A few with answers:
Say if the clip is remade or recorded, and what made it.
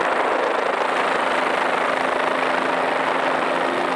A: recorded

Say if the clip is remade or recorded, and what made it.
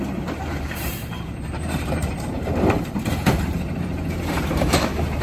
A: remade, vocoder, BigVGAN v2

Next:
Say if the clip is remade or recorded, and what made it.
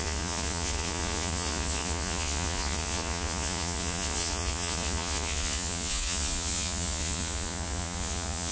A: remade, vocoder, Vocos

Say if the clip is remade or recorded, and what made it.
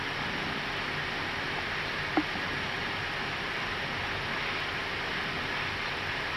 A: recorded